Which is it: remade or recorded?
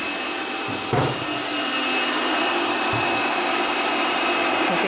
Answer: remade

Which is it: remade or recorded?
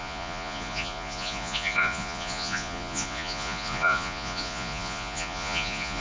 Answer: remade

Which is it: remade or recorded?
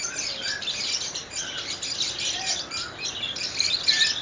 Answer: recorded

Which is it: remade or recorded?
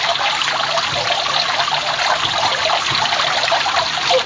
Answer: recorded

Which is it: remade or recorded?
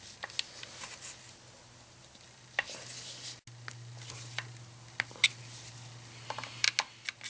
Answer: recorded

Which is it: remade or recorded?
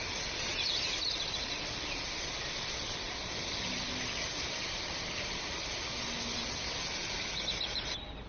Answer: remade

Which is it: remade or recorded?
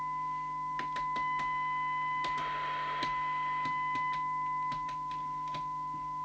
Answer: recorded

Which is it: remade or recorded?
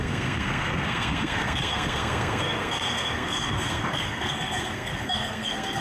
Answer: remade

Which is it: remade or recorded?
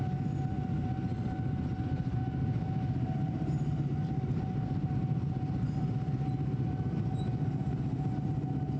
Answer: remade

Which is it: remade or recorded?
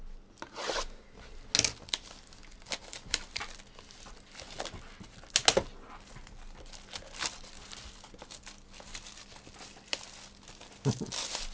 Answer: recorded